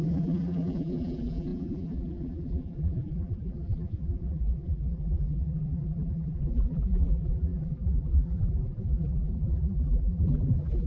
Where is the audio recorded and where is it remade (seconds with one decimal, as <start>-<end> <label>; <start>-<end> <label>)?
0.0-10.9 remade